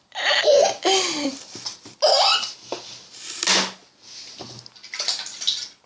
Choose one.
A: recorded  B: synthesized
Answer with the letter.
A